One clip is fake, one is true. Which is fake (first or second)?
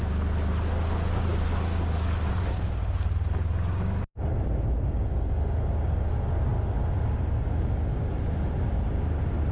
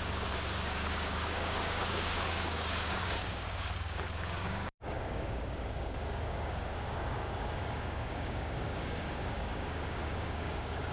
second